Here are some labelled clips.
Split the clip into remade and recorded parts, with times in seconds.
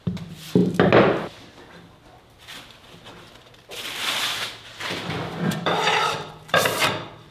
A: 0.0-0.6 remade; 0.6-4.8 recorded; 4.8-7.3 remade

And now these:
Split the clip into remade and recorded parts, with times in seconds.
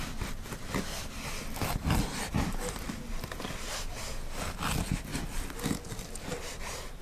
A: 0.0-7.0 recorded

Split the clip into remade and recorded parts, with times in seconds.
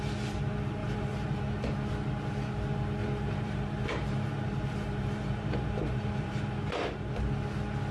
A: 0.0-0.8 recorded; 0.8-1.4 remade; 1.4-3.0 recorded; 3.0-7.1 remade; 7.1-7.9 recorded